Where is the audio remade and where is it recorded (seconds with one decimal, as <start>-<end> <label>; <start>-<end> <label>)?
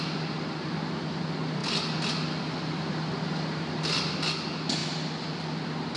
0.0-6.0 recorded